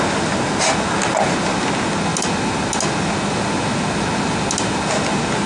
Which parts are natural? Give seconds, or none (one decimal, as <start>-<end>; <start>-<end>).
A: 0.0-5.5